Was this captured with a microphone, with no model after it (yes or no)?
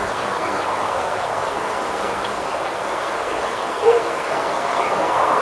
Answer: no